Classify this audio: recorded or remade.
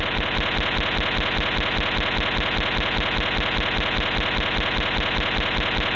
recorded